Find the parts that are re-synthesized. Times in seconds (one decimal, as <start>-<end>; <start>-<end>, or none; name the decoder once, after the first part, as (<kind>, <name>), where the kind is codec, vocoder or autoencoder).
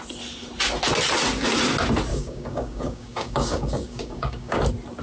2.1-4.6 (codec, DAC)